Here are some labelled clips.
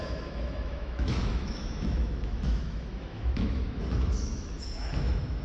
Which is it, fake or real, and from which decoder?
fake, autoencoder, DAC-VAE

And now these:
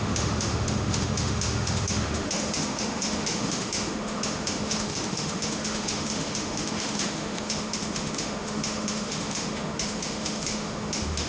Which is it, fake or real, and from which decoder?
fake, autoencoder, DAC-VAE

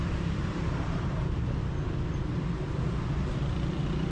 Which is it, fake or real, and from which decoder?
real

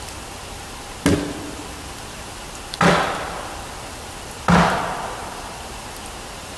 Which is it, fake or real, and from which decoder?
real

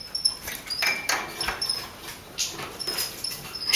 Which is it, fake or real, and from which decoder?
real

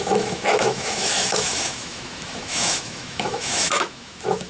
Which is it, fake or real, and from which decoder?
fake, autoencoder, DAC-VAE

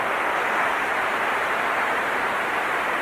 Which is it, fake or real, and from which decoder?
real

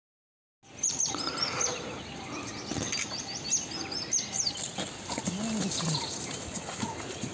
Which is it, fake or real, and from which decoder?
real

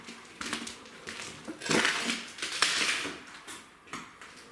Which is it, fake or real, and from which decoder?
real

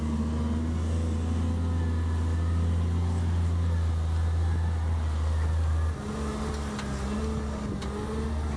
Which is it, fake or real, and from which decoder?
real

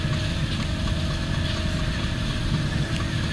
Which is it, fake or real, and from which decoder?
real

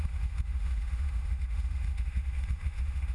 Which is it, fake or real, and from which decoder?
fake, autoencoder, DAC-VAE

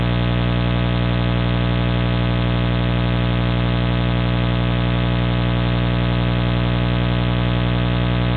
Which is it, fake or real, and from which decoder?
real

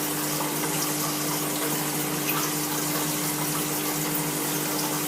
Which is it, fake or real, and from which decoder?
real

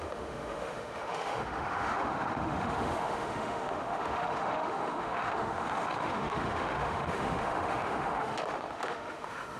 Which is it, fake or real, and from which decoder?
fake, autoencoder, DAC-VAE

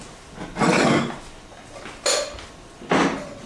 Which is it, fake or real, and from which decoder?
real